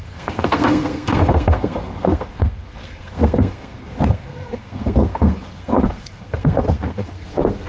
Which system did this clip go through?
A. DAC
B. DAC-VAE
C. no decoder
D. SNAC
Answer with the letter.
D